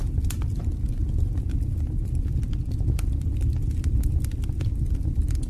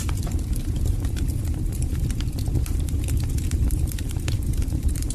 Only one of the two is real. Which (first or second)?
first